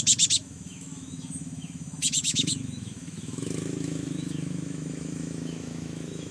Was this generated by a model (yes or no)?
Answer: yes